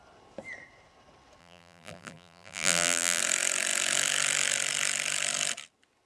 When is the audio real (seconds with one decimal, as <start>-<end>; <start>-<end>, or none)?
0.0-1.4; 3.2-6.1